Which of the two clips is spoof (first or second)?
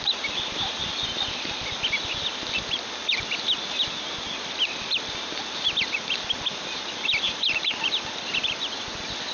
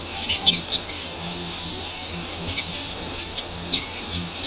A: second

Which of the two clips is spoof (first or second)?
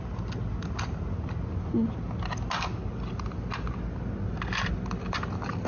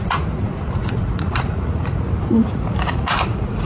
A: second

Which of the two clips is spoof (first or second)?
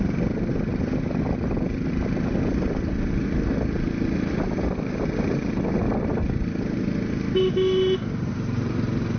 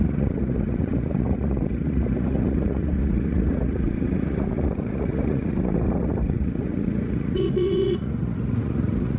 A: second